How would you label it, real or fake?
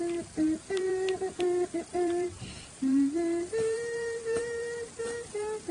fake